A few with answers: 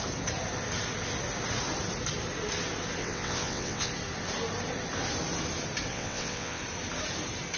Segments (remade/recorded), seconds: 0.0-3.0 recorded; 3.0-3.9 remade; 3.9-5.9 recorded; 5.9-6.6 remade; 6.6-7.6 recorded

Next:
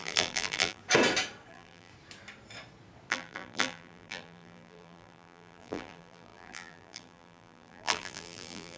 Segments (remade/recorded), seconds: 0.0-0.8 remade; 0.8-1.5 recorded; 1.5-1.9 remade; 1.9-3.1 recorded; 3.1-8.8 remade

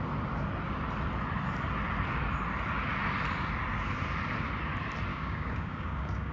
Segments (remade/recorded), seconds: 0.0-5.1 recorded; 5.1-6.3 remade

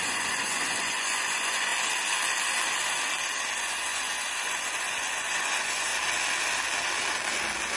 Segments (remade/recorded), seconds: 0.0-1.7 remade; 1.7-3.6 recorded; 3.6-5.9 remade; 5.9-7.8 recorded

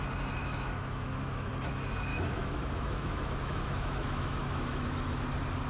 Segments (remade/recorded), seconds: 0.0-0.4 recorded; 0.4-1.5 remade; 1.5-2.1 recorded; 2.1-5.2 remade; 5.2-5.7 recorded

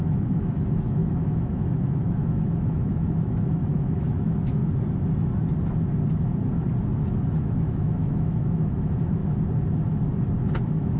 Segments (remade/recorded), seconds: 0.0-4.6 remade; 4.6-7.4 recorded; 7.4-9.2 remade; 9.2-10.6 recorded; 10.6-11.0 remade

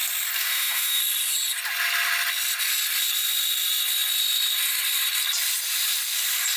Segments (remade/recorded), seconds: 0.0-0.4 recorded; 0.4-1.0 remade; 1.0-6.6 recorded

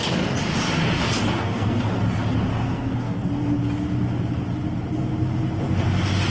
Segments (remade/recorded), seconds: 0.0-1.3 recorded; 1.3-2.0 remade; 2.0-2.5 recorded; 2.5-3.3 remade; 3.3-6.3 recorded